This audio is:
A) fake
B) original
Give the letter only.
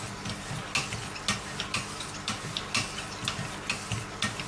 B